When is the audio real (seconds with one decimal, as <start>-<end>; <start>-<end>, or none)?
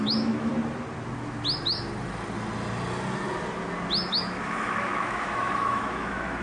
0.5-4.1